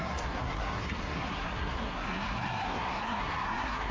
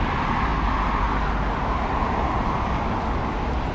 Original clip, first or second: second